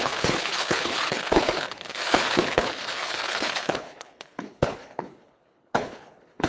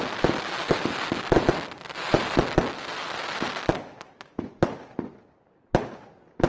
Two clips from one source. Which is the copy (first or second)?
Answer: first